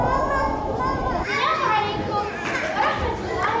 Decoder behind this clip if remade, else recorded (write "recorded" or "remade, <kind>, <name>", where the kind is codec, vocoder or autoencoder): recorded